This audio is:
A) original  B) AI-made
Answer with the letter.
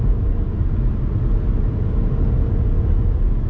A